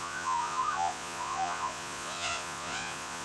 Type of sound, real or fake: fake